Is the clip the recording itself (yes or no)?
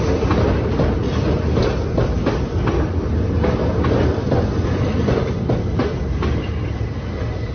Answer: yes